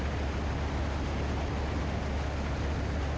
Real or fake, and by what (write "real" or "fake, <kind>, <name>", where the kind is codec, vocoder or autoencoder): real